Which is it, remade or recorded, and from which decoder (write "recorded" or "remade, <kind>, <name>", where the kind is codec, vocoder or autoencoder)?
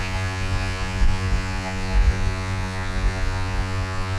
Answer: remade, vocoder, Vocos